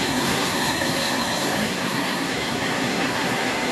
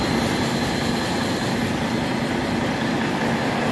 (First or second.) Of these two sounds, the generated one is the first